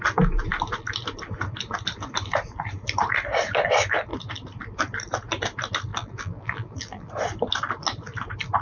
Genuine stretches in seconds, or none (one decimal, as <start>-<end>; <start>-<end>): 0.0-5.9; 7.1-8.6